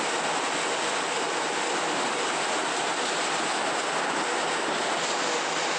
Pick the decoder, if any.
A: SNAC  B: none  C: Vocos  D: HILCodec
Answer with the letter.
B